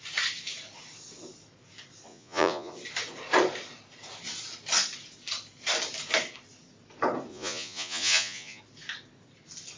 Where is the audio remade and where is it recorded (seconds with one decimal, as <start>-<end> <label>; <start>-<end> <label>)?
0.0-2.1 recorded; 2.1-2.7 remade; 2.7-7.3 recorded; 7.3-8.6 remade; 8.6-9.8 recorded